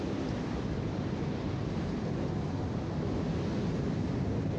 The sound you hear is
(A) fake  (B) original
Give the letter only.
B